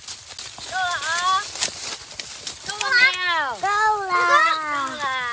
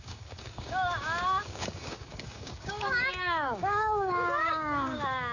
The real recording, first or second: first